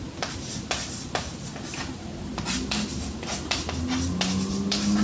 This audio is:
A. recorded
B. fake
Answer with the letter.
A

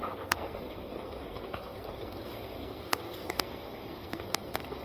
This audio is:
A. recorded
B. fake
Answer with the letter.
B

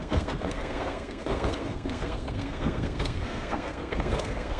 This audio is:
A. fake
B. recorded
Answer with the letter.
A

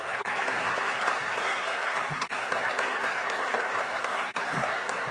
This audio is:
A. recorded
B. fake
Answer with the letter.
B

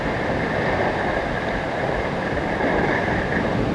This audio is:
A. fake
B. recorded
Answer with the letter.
B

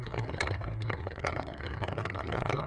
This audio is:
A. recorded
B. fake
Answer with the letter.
B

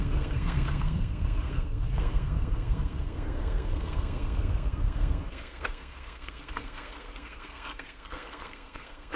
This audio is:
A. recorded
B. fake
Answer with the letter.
B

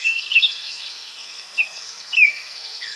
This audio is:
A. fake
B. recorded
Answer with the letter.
A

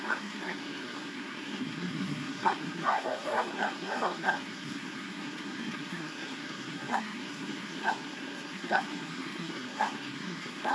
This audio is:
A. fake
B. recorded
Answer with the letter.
A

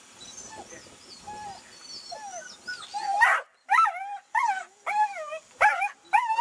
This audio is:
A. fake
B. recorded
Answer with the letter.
B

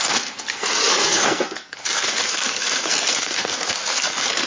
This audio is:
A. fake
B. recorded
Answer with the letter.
A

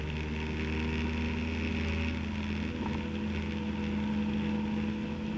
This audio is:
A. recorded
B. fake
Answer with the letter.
A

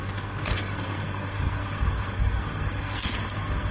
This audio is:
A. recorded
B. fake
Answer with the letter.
B